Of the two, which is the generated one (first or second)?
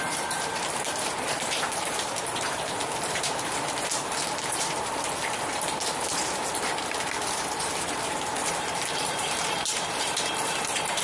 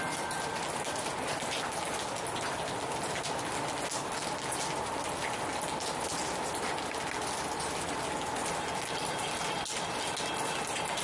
first